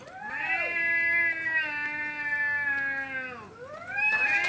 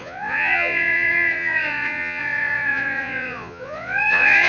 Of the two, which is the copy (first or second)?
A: second